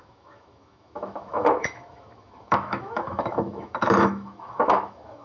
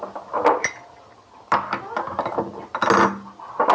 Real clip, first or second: second